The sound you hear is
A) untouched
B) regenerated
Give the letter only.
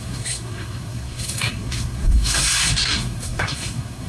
B